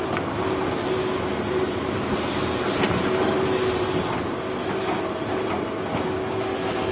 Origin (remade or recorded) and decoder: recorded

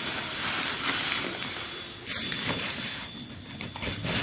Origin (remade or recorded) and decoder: recorded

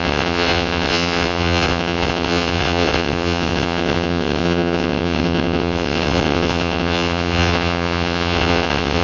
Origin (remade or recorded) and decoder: remade, vocoder, WaveNeXt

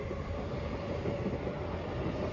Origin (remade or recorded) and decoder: recorded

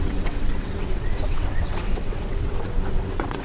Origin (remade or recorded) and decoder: remade, vocoder, WaveNeXt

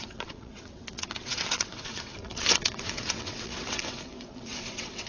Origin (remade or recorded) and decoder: remade, vocoder, WaveNeXt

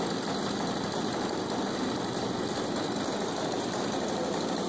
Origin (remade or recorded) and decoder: recorded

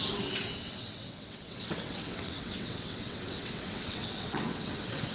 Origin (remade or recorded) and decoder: remade, vocoder, WaveNeXt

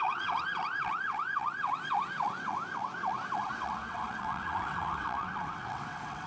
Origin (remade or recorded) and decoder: remade, vocoder, WaveNeXt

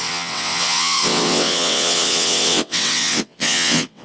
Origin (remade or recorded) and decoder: remade, vocoder, WaveNeXt